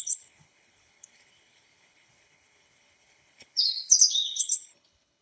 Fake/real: fake